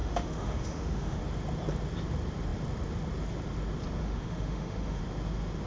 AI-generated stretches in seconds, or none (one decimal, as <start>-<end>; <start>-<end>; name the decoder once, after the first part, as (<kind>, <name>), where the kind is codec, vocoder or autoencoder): 0.0-1.2 (autoencoder, DAC-VAE); 4.0-5.0